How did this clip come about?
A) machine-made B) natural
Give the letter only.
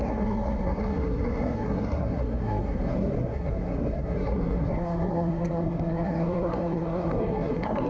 A